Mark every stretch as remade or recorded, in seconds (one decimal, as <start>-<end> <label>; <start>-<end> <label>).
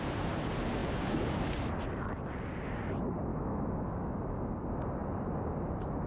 0.0-3.3 recorded; 3.3-4.5 remade; 4.5-6.1 recorded